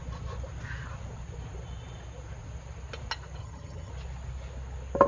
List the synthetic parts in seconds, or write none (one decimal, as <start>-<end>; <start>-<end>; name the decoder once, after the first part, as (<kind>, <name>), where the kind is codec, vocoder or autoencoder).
3.4-3.9 (vocoder, HiFi-GAN)